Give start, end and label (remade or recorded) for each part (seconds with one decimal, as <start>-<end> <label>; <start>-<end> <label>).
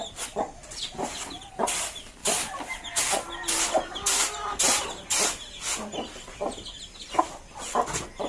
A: 0.0-8.3 recorded